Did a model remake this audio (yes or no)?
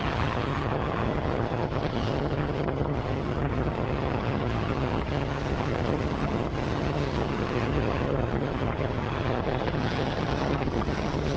yes